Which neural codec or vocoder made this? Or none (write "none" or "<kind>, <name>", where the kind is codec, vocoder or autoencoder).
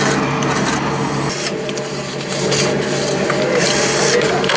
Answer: none